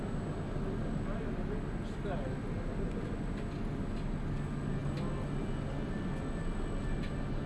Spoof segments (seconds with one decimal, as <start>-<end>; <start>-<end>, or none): none